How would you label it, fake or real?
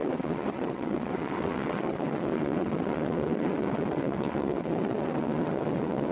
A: fake